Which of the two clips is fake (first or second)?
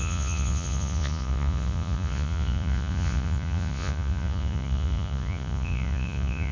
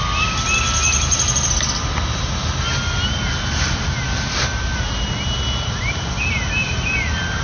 first